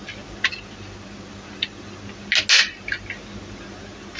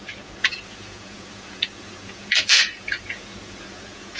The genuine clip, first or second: first